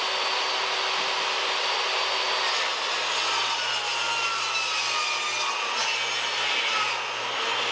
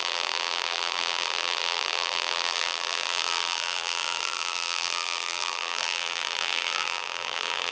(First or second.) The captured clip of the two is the first